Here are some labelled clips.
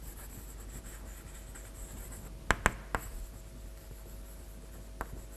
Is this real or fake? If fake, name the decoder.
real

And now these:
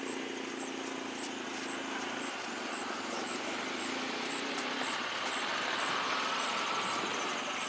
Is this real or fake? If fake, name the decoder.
real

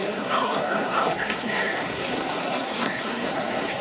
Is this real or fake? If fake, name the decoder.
fake, codec, SNAC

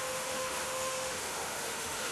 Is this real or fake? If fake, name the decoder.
fake, autoencoder, DAC-VAE